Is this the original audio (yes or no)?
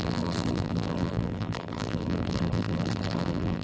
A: no